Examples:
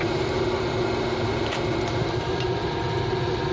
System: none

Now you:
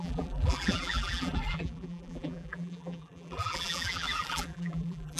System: vocoder, BigVGAN v2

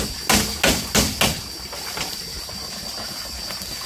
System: none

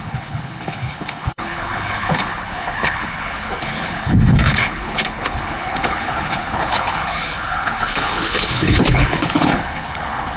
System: codec, HILCodec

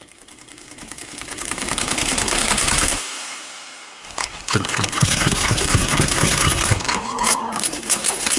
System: codec, SNAC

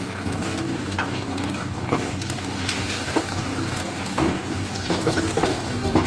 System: codec, DAC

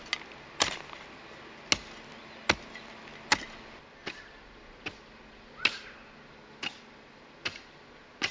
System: none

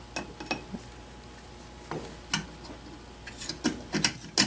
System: none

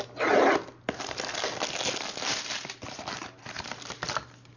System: none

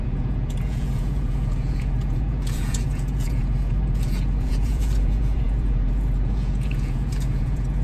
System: vocoder, Vocos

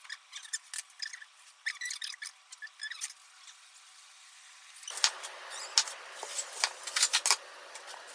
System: none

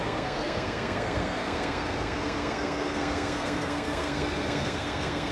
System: codec, SNAC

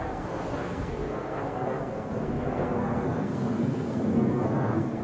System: codec, SNAC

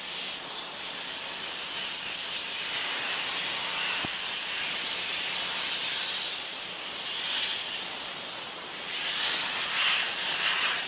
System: none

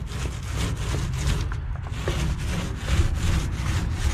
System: none